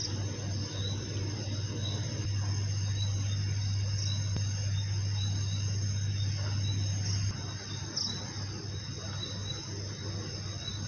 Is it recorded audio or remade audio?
recorded